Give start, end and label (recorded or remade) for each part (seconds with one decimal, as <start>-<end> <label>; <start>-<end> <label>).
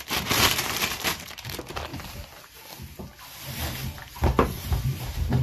0.0-1.9 remade; 1.9-3.5 recorded; 3.5-5.4 remade